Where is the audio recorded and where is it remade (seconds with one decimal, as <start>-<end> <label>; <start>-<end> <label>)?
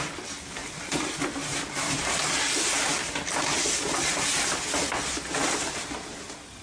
0.0-0.6 recorded; 0.6-4.6 remade; 4.6-5.4 recorded; 5.4-5.9 remade; 5.9-6.6 recorded